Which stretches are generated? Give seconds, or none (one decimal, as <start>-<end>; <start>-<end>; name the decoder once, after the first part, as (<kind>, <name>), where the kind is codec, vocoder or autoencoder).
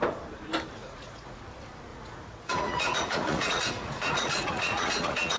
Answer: 0.8-1.4 (vocoder, Vocos); 1.9-5.4